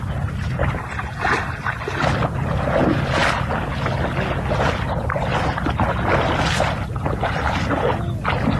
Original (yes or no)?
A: yes